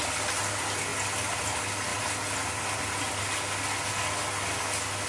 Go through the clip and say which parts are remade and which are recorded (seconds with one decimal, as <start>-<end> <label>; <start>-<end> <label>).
0.0-5.1 recorded